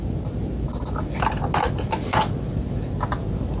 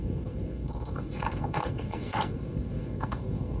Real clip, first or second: first